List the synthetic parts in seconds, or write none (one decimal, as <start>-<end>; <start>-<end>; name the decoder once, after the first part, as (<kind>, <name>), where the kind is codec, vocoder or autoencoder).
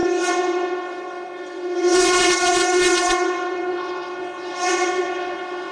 0.0-5.7 (vocoder, WaveNeXt)